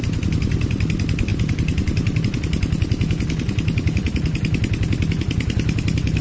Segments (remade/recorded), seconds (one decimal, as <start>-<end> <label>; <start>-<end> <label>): 0.0-1.3 recorded; 1.3-2.2 remade; 2.2-6.2 recorded